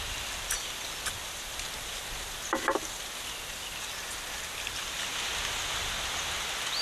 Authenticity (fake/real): real